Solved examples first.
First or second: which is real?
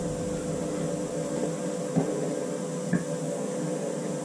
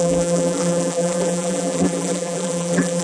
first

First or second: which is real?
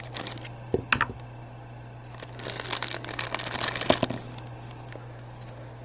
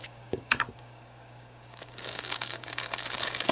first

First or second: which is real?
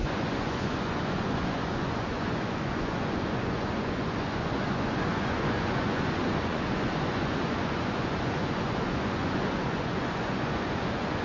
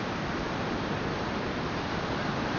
second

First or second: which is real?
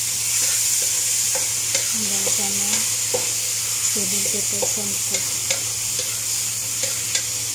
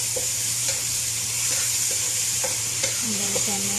first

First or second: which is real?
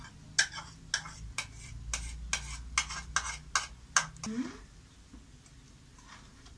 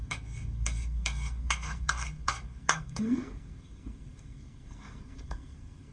first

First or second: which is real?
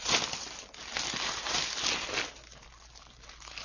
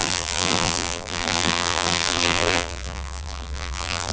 first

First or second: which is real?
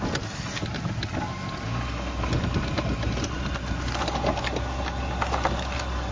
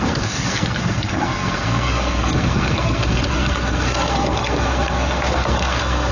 first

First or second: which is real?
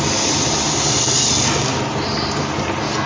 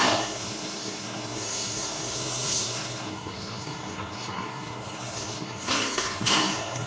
first